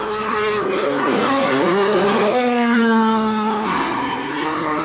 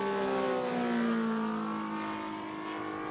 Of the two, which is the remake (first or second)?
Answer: first